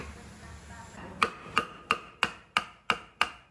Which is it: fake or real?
real